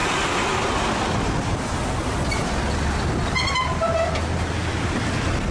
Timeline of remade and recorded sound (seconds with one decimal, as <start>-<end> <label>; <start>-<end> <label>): 0.0-5.5 recorded